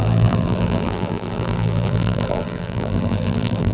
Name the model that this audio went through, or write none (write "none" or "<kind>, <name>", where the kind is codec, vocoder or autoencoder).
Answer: vocoder, BigVGAN v2